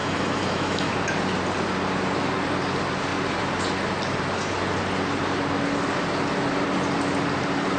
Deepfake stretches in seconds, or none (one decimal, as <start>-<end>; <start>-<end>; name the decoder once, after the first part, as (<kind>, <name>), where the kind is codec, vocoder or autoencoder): 0.0-0.9 (autoencoder, DAC-VAE)